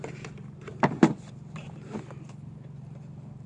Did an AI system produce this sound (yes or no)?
yes